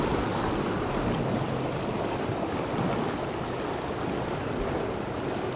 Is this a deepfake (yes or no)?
no